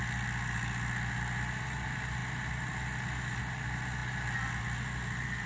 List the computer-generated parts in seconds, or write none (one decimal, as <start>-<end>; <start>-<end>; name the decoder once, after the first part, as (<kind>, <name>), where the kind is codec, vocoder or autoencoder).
none